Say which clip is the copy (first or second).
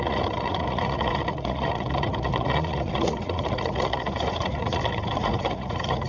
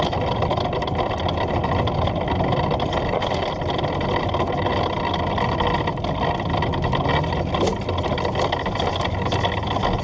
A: first